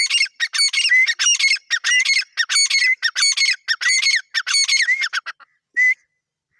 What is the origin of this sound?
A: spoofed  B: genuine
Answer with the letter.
B